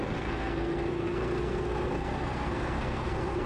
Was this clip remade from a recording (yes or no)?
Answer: yes